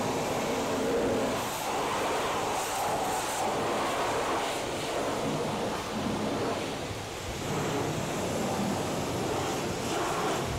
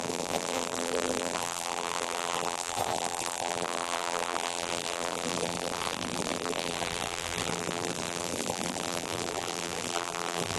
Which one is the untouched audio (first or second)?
first